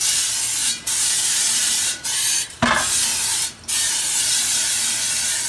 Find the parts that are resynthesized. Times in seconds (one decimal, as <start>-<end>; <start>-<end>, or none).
0.6-2.8; 3.3-4.7